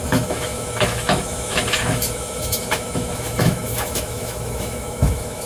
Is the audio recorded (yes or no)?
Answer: no